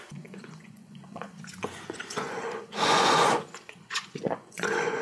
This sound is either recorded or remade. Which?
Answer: remade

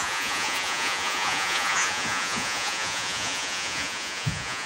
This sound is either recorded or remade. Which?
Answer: remade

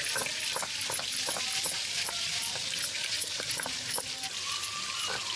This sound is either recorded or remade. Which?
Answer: recorded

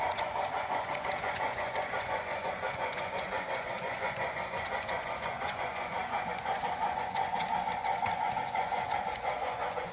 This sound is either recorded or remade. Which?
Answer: remade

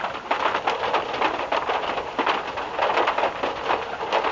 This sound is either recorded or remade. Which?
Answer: recorded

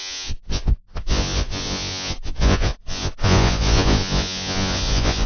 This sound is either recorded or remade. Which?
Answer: remade